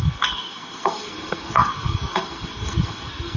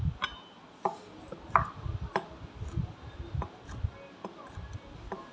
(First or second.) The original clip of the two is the second